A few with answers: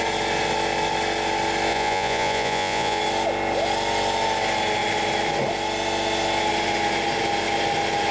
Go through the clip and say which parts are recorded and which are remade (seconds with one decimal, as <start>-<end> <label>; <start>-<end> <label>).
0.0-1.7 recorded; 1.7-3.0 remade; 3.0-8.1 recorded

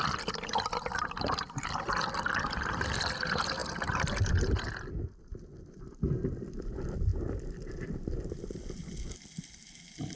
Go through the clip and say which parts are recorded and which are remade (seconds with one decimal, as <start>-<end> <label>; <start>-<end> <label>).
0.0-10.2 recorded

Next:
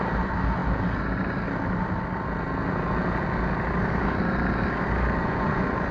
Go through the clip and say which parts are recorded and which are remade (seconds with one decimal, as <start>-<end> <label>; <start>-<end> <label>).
0.0-5.2 recorded; 5.2-5.9 remade

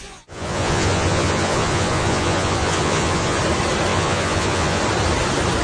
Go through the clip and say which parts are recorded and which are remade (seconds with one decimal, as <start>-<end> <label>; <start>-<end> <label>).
0.0-3.4 remade; 3.4-3.9 recorded; 3.9-4.8 remade; 4.8-5.6 recorded

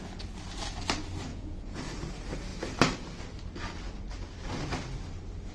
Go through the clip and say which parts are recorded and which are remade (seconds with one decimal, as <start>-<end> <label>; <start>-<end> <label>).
0.0-1.3 recorded; 1.3-1.8 remade; 1.8-5.5 recorded